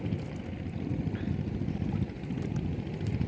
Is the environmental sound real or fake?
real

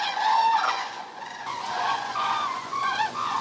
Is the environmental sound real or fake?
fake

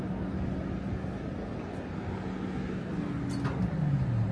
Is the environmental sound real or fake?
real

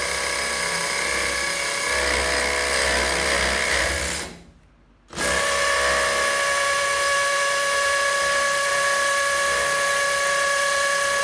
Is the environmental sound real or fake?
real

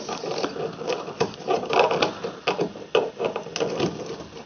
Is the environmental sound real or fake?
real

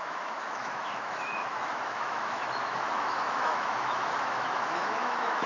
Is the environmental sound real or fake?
fake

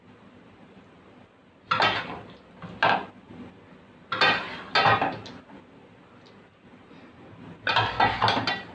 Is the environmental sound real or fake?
real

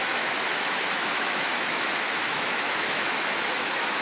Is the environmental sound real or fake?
fake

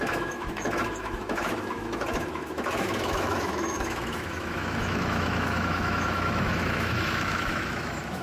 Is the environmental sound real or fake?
fake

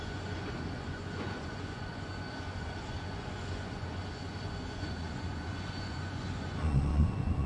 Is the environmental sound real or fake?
fake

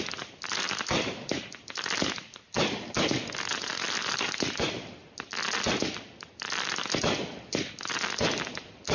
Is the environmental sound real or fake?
real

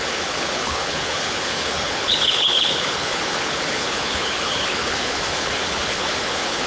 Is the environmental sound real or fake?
fake